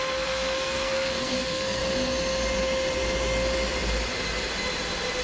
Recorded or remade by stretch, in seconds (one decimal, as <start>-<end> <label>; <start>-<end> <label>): 0.0-1.8 remade; 1.8-5.2 recorded